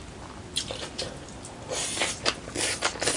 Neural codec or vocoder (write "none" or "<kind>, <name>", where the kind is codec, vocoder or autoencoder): none